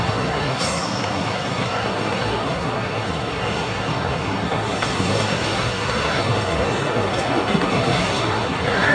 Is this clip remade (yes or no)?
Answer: yes